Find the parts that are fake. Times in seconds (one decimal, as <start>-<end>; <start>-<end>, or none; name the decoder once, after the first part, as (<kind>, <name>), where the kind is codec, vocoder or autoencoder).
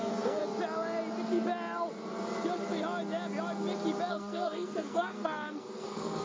0.0-0.4 (codec, SNAC); 4.1-6.2